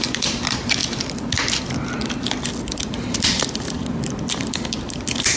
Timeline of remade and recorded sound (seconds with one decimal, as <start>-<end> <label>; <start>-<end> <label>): 0.0-5.4 recorded